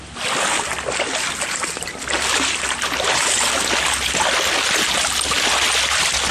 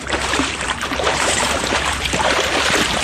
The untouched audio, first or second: first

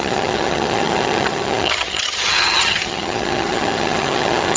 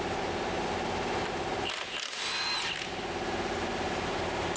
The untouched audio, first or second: second